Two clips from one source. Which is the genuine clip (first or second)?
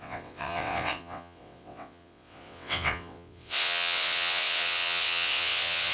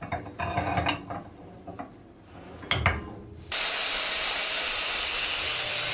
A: second